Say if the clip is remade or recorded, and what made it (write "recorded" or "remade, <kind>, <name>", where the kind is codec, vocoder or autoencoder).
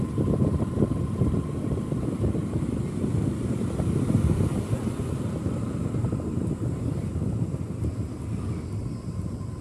remade, vocoder, BigVGAN v2